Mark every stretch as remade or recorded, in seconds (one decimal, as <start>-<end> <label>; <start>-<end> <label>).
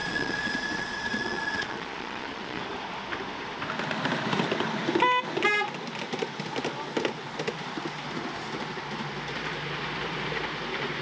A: 0.0-2.6 remade; 2.6-11.0 recorded